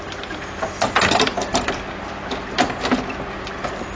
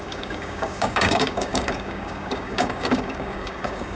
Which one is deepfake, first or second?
second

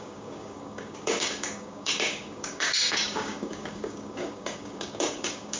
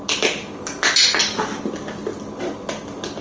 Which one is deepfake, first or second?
first